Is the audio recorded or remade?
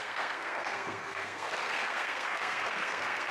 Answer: remade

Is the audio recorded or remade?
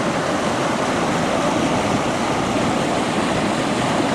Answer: recorded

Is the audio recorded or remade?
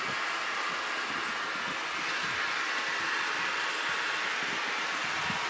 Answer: recorded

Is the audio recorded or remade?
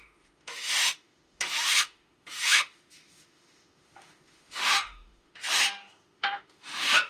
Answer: remade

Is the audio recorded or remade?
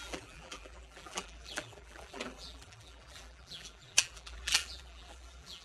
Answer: remade